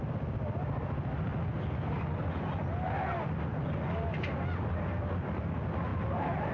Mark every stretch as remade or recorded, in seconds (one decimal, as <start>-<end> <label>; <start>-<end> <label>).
0.0-6.5 recorded